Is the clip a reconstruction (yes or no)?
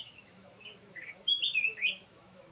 yes